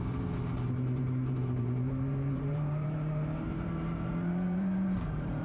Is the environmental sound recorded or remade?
remade